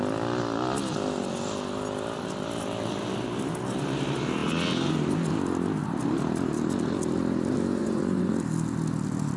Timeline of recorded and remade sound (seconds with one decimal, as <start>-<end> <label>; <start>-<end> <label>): 0.0-7.8 recorded; 7.8-8.3 remade; 8.3-9.4 recorded